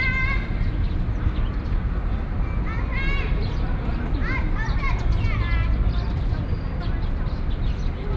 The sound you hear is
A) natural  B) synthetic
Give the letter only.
A